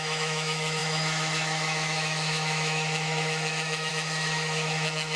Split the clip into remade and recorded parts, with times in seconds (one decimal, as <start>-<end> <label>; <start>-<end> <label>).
0.0-5.2 remade